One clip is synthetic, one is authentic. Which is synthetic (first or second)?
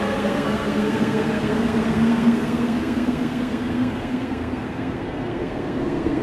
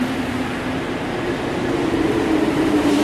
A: first